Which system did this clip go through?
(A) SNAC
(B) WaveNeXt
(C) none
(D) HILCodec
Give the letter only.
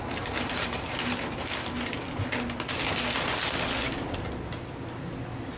C